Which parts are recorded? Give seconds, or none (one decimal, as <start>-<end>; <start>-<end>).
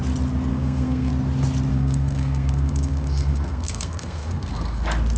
0.0-0.5; 1.1-1.7; 4.8-5.2